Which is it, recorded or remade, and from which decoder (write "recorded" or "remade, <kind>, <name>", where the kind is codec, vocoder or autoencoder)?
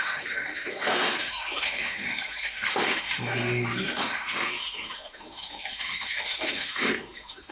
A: remade, autoencoder, DAC-VAE